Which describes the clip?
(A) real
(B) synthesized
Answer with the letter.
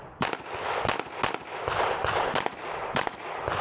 A